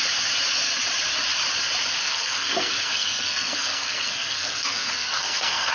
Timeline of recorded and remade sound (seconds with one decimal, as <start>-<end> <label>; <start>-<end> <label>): 0.0-2.0 recorded; 2.0-5.7 remade